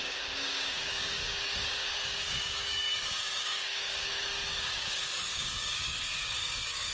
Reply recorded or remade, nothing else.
remade